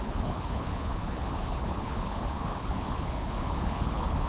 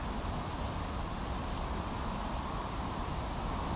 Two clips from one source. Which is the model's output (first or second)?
first